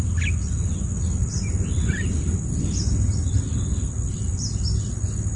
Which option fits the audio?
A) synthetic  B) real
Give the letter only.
B